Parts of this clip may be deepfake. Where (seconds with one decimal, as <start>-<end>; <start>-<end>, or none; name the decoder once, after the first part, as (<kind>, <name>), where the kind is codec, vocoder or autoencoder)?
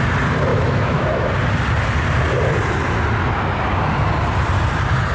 0.5-1.3 (autoencoder, DAC-VAE)